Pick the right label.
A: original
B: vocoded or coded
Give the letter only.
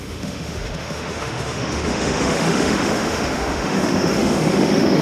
B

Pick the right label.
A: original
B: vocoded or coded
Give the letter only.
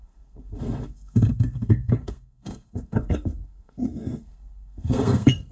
B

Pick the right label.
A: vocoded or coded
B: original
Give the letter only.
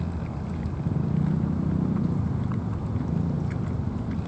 B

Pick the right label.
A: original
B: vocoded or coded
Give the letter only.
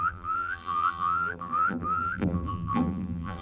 B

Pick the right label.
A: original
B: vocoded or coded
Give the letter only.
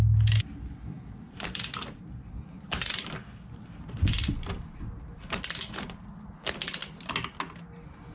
A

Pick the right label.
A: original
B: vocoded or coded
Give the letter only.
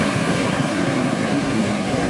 B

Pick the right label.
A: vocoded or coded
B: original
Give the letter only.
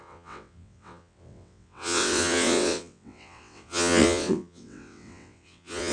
A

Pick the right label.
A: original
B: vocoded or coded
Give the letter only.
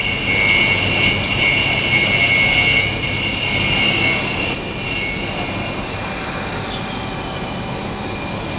A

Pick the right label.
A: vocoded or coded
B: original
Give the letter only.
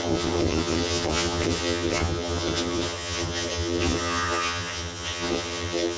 A